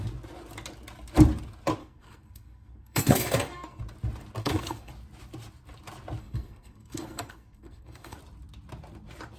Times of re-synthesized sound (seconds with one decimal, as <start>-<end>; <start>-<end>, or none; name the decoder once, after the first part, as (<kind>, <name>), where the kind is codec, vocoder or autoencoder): 1.8-3.8 (codec, SNAC); 4.4-4.9; 6.2-8.2